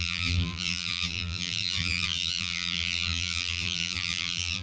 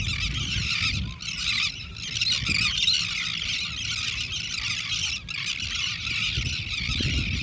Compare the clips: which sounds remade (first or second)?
first